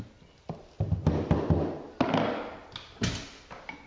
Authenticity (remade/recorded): recorded